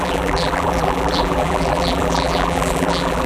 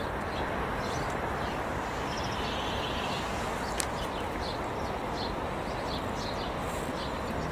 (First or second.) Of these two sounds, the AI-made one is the first